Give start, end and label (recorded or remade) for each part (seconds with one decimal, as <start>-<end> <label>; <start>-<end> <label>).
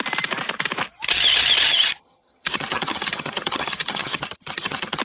0.0-1.7 recorded; 1.7-5.0 remade